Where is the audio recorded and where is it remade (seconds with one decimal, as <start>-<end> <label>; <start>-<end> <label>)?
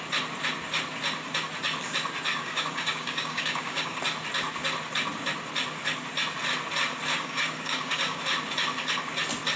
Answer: 0.0-2.3 recorded; 2.3-4.0 remade; 4.0-7.1 recorded; 7.1-8.2 remade; 8.2-9.6 recorded